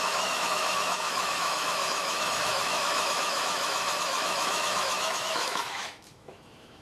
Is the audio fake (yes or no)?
yes